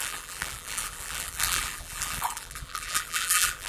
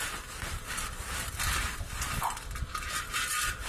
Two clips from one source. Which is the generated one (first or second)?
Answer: first